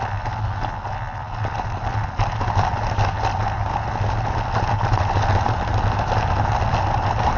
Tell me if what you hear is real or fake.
real